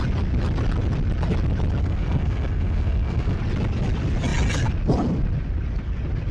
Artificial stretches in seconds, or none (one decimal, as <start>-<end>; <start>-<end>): 1.8-3.4